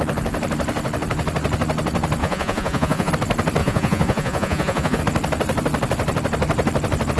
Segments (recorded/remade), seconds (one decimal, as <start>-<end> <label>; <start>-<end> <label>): 0.0-2.2 recorded; 2.2-3.1 remade; 3.1-3.6 recorded; 3.6-5.0 remade; 5.0-7.2 recorded